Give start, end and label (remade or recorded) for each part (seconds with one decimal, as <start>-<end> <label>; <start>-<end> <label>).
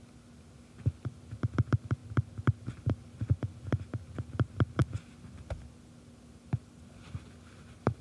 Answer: 0.0-8.0 recorded